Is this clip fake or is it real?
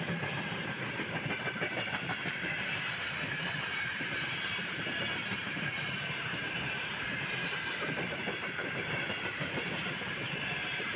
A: fake